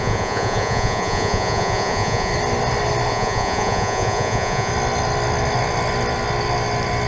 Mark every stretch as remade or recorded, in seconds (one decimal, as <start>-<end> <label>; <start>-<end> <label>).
0.0-2.3 remade; 2.3-3.1 recorded; 3.1-4.7 remade; 4.7-7.1 recorded